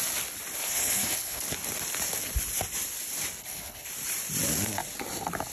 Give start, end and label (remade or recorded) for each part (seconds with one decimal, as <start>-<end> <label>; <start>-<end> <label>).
0.0-0.6 recorded; 0.6-1.4 remade; 1.4-3.4 recorded; 3.4-3.9 remade; 3.9-5.5 recorded